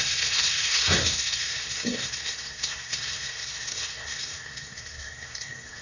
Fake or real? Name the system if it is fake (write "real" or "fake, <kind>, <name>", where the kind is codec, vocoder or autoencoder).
fake, codec, SNAC